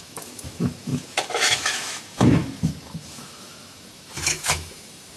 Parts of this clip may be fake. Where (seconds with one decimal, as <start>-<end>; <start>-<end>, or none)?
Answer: 0.0-5.2